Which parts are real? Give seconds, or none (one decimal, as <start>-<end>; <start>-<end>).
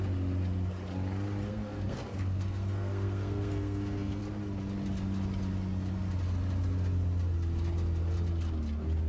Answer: 0.0-1.5; 4.2-9.1